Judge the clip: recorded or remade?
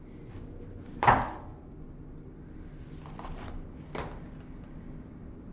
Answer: recorded